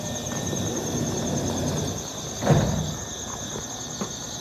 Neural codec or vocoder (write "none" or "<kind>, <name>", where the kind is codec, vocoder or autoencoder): none